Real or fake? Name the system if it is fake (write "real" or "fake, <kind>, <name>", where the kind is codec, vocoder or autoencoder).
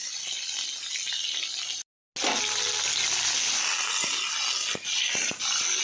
real